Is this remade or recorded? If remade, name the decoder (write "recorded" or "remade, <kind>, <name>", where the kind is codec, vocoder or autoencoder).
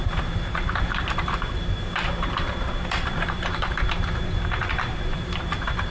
remade, vocoder, BigVGAN v2